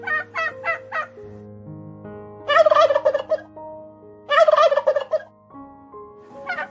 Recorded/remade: recorded